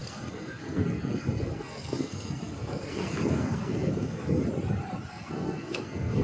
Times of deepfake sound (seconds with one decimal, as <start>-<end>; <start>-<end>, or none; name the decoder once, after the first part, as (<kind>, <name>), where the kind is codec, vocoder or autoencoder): 0.0-4.4 (codec, SNAC); 5.1-6.2